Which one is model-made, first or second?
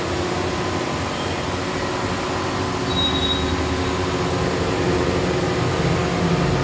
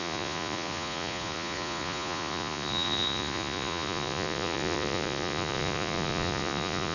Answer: second